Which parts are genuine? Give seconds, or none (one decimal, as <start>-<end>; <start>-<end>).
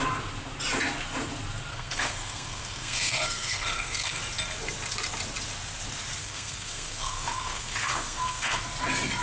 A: 0.0-1.7; 4.2-6.2; 8.6-9.2